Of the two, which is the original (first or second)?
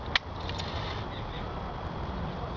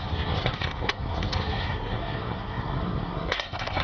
first